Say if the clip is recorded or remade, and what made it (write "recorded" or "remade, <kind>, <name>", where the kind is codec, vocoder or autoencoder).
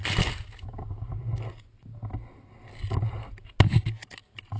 recorded